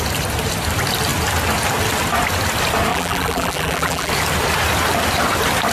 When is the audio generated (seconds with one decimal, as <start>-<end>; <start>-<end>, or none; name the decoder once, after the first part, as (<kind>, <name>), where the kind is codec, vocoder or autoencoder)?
2.9-4.1 (vocoder, BigVGAN v2)